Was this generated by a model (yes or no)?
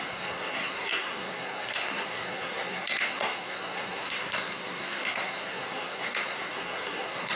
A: yes